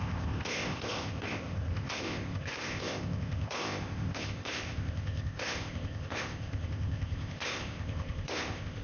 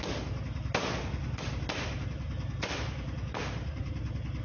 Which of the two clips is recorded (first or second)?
second